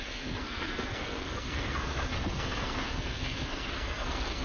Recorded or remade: remade